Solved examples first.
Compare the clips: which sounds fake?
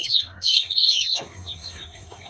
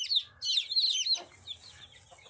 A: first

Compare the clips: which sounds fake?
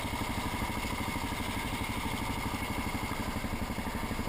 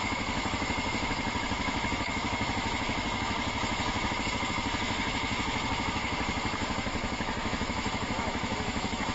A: second